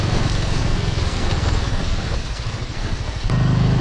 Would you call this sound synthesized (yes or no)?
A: yes